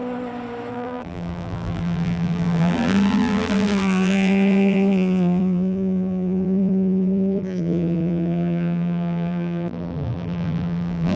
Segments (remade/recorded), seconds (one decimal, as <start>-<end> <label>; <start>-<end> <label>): 0.0-0.7 recorded; 0.7-11.2 remade